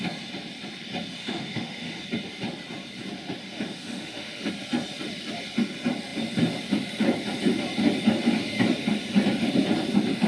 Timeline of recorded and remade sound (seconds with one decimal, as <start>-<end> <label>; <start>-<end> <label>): 0.0-1.2 recorded; 1.2-2.0 remade; 2.0-3.4 recorded; 3.4-4.5 remade; 4.5-10.3 recorded